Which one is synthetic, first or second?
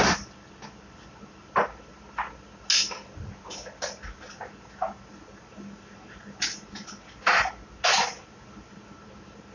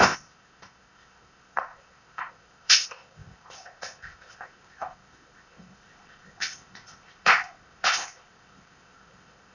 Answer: second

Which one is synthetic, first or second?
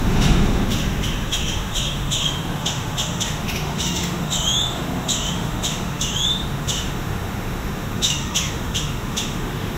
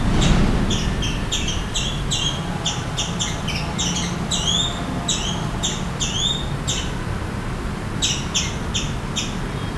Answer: first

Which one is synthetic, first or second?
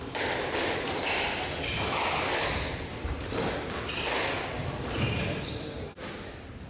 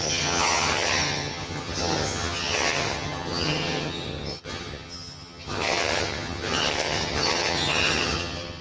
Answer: second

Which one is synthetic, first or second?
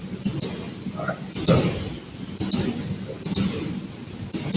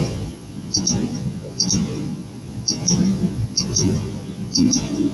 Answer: second